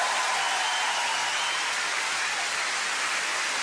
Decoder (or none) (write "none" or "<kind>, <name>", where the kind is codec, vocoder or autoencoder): none